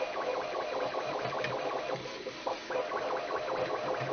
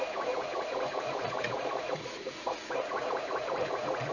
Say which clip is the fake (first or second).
second